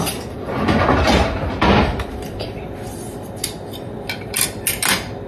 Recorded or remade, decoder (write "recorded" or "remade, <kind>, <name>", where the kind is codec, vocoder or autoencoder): recorded